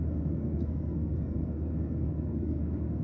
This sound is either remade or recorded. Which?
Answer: remade